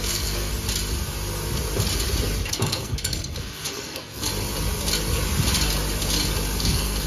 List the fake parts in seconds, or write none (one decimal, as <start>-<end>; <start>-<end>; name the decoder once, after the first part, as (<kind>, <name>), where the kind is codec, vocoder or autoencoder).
0.0-0.5 (codec, SNAC); 2.5-4.3; 6.6-7.1